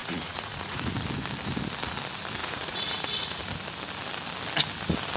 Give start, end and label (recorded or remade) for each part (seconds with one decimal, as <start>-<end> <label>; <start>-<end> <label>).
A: 0.0-0.9 remade; 0.9-2.4 recorded; 2.4-3.4 remade; 3.4-5.2 recorded